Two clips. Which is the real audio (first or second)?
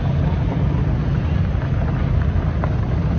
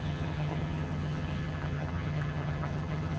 first